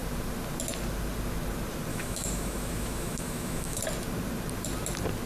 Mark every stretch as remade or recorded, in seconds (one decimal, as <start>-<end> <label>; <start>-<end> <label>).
0.0-1.9 recorded; 1.9-3.8 remade; 3.8-5.3 recorded